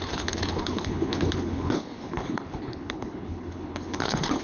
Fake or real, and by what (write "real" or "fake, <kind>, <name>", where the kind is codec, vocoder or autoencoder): fake, codec, HILCodec